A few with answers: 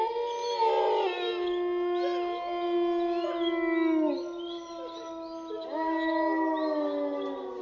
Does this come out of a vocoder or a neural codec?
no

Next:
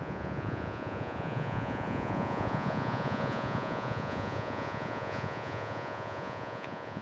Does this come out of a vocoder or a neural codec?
yes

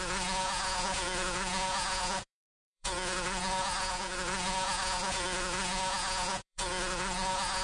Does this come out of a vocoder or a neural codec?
yes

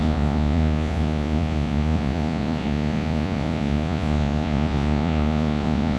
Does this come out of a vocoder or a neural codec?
yes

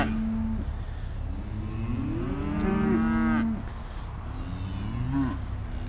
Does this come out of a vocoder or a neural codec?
no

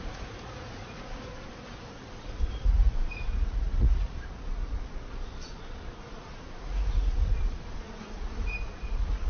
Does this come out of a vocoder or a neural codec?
yes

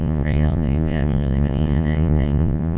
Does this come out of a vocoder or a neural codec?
yes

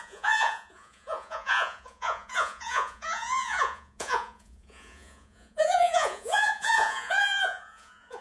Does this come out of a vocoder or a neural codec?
yes